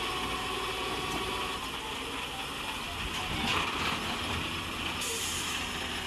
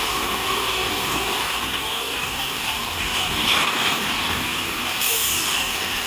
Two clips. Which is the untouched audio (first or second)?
first